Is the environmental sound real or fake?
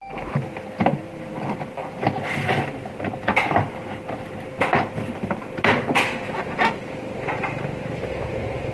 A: real